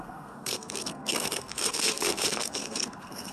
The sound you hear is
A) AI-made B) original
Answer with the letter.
A